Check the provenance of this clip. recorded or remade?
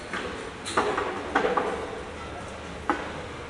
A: recorded